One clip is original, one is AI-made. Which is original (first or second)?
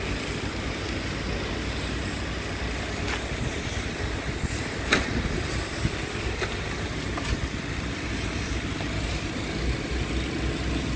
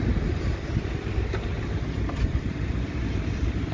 first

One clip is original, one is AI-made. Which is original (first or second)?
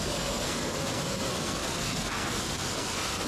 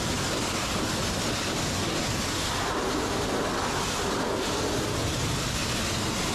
second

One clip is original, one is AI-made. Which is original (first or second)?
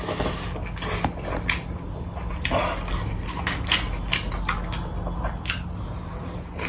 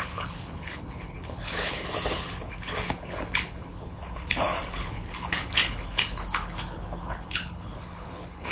first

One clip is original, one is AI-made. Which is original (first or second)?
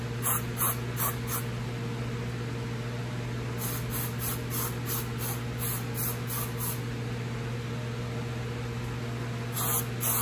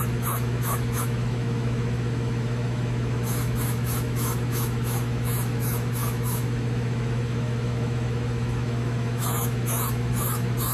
first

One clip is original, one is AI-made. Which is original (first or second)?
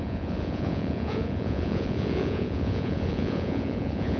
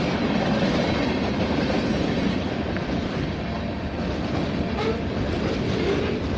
second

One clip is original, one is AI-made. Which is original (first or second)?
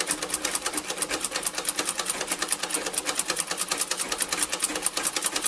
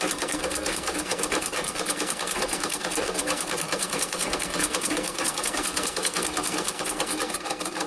first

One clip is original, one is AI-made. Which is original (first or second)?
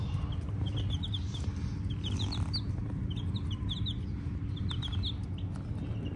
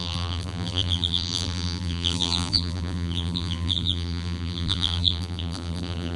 first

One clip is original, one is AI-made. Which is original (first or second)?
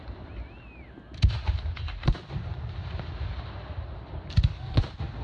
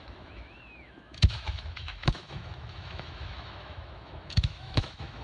first